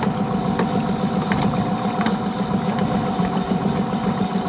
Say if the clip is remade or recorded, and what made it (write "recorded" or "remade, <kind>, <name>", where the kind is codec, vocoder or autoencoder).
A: recorded